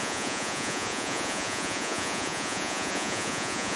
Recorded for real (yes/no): no